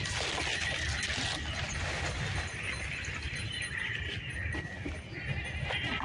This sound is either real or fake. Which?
real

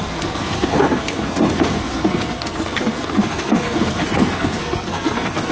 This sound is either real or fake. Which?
fake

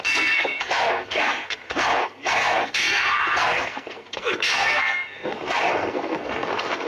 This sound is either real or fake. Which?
fake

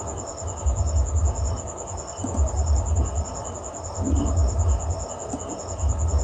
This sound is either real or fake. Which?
real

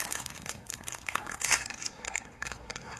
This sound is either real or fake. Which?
fake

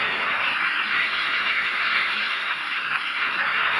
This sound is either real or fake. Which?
fake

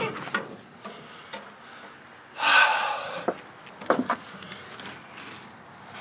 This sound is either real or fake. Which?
real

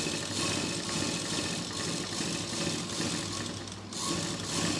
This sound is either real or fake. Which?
real